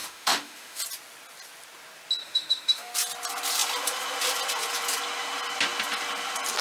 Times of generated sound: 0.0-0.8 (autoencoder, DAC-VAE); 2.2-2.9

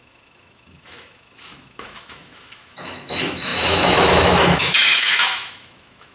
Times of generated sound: 0.0-6.1 (autoencoder, DAC-VAE)

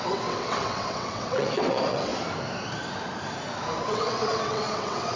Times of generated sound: 0.0-2.1 (vocoder, WaveNeXt); 3.8-5.2